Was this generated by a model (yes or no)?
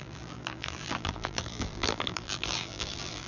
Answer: yes